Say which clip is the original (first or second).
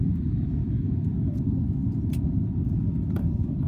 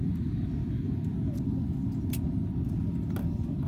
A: second